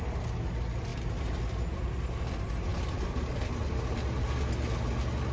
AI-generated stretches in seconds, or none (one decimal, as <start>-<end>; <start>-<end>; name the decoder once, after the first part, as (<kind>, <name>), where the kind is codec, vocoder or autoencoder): none